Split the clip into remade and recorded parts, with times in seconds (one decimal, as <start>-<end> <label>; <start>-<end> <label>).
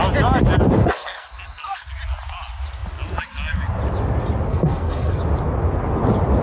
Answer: 0.0-0.8 recorded; 0.8-1.9 remade; 1.9-4.5 recorded; 4.5-5.2 remade; 5.2-6.4 recorded